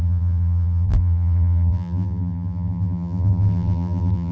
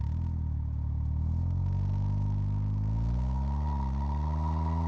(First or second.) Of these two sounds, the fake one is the first